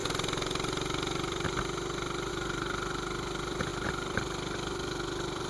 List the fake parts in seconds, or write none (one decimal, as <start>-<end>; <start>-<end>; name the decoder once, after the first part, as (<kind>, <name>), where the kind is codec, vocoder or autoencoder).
none